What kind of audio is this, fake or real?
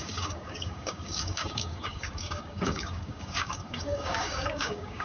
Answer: fake